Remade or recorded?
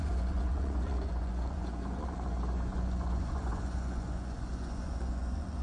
remade